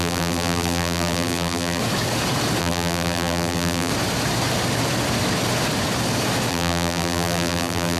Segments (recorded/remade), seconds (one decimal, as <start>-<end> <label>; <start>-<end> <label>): 0.0-1.8 remade; 1.8-2.6 recorded; 2.6-3.9 remade; 3.9-6.5 recorded; 6.5-8.0 remade